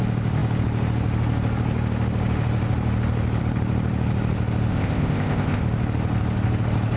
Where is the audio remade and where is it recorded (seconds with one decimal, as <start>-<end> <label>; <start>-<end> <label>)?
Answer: 0.0-4.7 recorded; 4.7-5.6 remade; 5.6-7.0 recorded